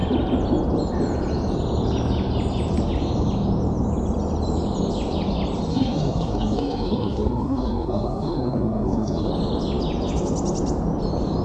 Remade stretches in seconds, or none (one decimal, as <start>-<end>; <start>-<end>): 5.7-9.3